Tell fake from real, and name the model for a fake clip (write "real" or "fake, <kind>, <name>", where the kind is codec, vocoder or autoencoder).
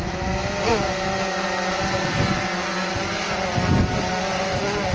real